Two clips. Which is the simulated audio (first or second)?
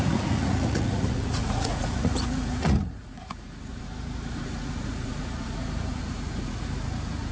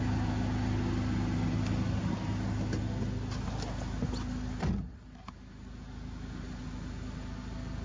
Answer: first